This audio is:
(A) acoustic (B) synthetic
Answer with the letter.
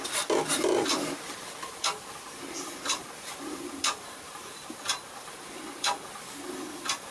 A